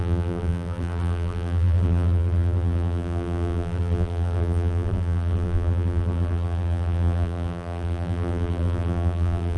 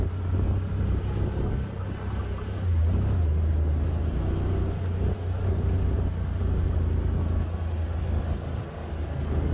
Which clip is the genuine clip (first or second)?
second